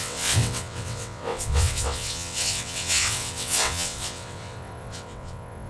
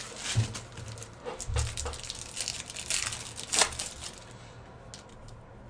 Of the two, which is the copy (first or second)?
first